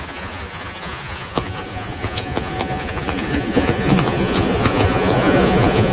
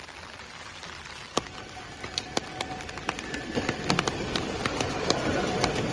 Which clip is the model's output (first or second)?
first